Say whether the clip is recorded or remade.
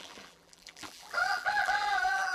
remade